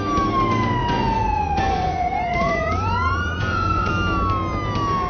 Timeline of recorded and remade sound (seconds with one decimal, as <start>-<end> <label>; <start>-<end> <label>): 0.0-0.8 recorded; 0.8-3.9 remade; 3.9-5.1 recorded